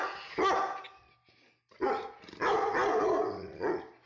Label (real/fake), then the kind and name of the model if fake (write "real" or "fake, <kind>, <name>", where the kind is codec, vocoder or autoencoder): real